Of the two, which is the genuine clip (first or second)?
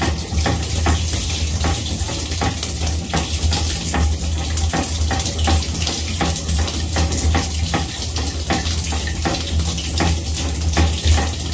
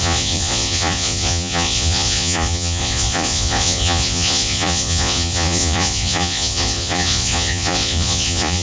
first